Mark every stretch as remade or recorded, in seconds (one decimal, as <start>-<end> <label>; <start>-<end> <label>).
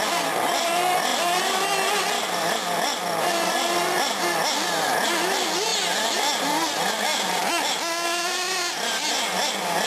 0.0-9.9 recorded